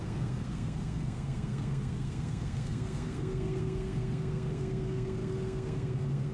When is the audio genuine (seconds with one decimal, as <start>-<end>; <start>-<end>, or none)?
none